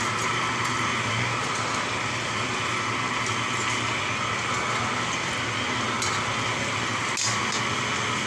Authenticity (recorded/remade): recorded